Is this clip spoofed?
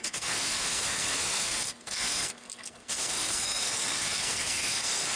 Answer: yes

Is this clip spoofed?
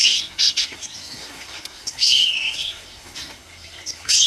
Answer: yes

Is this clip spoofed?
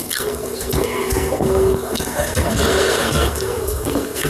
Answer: yes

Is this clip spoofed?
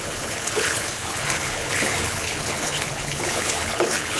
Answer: yes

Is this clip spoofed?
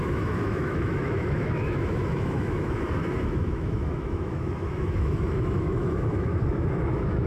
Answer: yes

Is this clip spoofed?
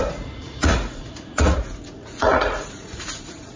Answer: yes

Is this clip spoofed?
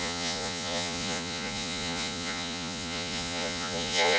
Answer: yes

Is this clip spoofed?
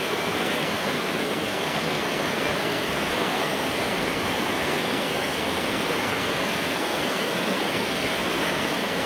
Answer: yes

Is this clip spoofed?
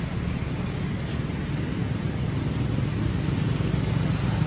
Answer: no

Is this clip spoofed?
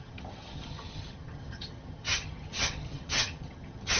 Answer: yes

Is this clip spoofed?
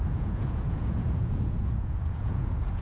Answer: yes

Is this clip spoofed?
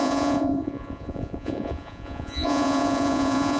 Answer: yes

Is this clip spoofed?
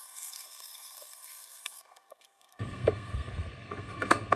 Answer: yes